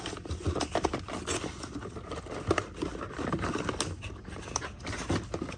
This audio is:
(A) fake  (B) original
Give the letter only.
B